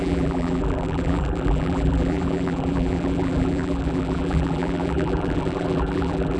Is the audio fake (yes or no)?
yes